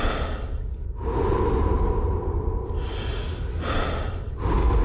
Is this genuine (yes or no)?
yes